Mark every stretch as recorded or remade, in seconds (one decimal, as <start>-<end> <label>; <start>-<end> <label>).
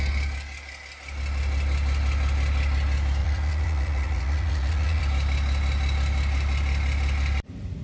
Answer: 0.0-3.2 recorded; 3.2-5.0 remade; 5.0-7.8 recorded